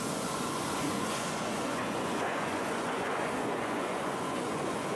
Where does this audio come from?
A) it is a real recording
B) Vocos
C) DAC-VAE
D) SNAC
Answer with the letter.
B